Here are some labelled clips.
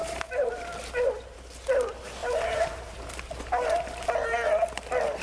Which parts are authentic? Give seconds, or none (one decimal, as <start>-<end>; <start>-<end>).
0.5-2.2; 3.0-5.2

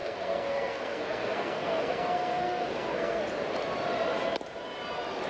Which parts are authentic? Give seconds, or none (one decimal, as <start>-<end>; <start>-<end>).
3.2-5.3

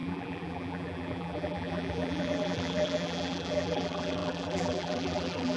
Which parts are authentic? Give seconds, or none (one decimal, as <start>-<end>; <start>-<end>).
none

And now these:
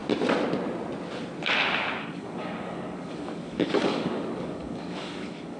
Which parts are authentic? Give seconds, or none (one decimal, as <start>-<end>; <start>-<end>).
0.0-2.0

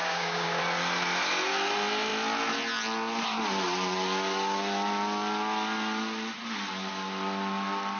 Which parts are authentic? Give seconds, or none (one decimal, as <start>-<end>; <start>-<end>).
0.6-8.0

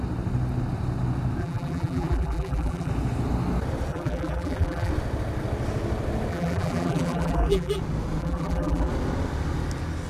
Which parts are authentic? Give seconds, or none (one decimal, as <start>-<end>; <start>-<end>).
0.0-1.4; 2.9-3.9; 4.9-6.3; 7.8-8.2; 8.9-10.1

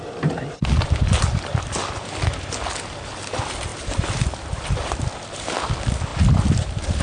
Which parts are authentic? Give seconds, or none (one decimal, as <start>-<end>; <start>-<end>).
6.1-7.0